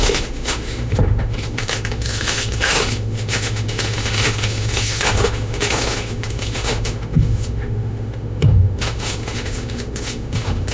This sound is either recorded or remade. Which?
remade